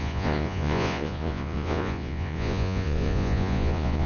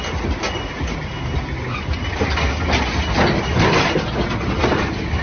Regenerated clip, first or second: first